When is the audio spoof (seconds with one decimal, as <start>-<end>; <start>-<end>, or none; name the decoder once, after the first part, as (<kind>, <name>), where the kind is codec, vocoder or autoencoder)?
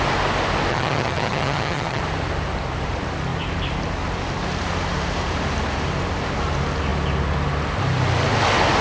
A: 0.7-2.0 (vocoder, HiFi-GAN)